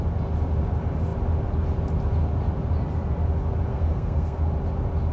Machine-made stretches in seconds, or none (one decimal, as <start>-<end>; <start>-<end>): 3.7-4.4